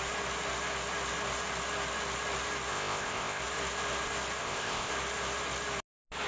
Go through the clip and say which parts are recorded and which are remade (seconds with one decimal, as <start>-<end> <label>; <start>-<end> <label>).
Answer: 0.0-2.7 recorded; 2.7-3.4 remade; 3.4-4.4 recorded; 4.4-4.9 remade; 4.9-6.3 recorded